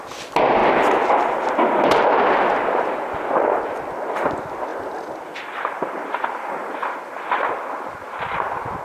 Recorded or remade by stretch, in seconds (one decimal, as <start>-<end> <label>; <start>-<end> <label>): 0.0-4.7 recorded; 4.7-7.5 remade; 7.5-8.8 recorded